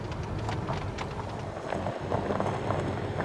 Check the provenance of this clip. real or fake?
real